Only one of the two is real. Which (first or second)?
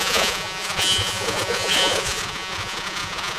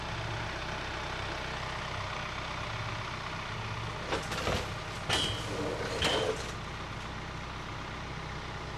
second